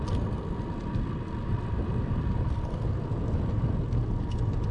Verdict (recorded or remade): recorded